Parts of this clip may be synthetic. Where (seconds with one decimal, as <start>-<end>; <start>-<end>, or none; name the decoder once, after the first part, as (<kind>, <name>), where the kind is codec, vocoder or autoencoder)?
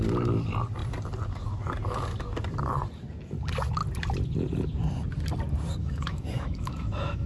5.8-7.3 (autoencoder, DAC-VAE)